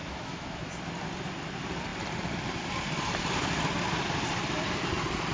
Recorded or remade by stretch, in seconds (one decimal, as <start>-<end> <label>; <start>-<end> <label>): 0.0-0.7 remade; 0.7-5.3 recorded